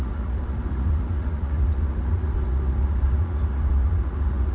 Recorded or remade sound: remade